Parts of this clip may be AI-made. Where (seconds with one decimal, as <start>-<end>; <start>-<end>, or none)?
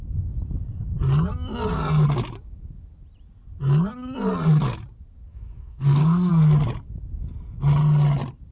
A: 5.3-6.3